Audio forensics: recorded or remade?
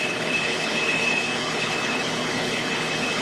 remade